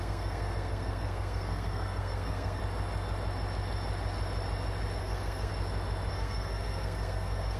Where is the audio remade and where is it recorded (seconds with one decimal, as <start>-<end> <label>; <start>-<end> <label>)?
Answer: 0.0-2.6 remade; 2.6-5.0 recorded; 5.0-5.5 remade; 5.5-6.1 recorded; 6.1-7.6 remade